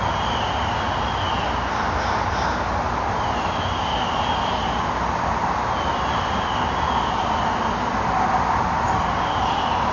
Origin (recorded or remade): recorded